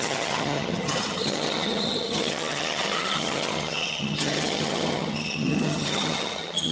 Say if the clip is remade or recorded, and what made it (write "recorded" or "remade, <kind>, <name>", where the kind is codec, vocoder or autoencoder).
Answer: remade, vocoder, HiFi-GAN